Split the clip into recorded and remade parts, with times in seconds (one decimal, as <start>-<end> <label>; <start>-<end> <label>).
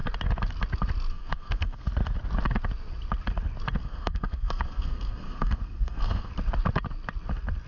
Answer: 0.0-1.1 recorded; 1.1-1.9 remade; 1.9-3.8 recorded; 3.8-6.3 remade; 6.3-7.7 recorded